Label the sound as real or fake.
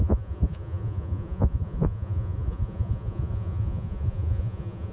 fake